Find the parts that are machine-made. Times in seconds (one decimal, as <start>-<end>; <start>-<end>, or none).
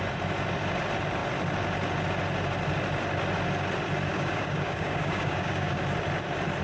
4.1-5.8